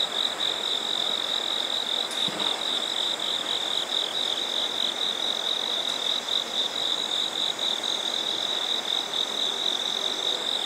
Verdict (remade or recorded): recorded